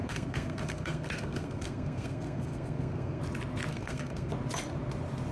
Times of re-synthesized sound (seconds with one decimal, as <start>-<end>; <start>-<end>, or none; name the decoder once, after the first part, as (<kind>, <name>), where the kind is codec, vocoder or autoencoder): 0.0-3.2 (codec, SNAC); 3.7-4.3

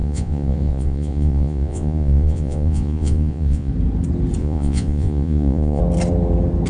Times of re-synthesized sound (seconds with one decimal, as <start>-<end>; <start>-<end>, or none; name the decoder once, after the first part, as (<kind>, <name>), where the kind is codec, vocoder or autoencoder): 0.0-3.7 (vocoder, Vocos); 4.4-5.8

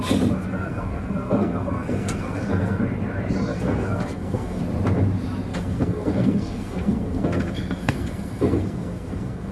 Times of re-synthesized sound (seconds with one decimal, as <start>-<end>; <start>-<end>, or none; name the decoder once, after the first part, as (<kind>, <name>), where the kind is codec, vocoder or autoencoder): 0.4-2.8 (codec, SNAC); 3.5-4.6; 5.5-9.5

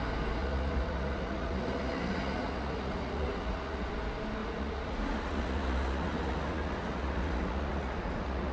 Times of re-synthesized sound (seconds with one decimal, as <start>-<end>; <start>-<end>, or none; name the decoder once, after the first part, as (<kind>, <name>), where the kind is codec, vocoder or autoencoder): 0.4-3.9 (vocoder, Vocos); 4.4-8.5

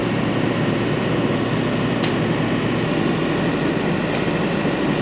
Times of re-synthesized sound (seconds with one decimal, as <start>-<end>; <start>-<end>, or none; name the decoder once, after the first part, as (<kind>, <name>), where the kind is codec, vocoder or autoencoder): none